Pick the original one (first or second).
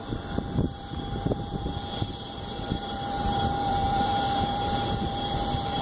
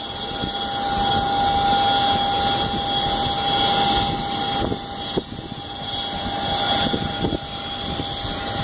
second